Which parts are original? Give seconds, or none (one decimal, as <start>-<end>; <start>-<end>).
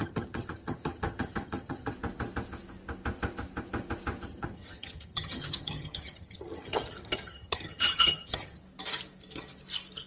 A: 1.9-4.3; 8.6-10.1